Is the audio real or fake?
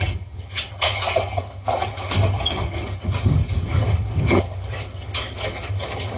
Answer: fake